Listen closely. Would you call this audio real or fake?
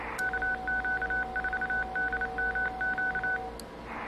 real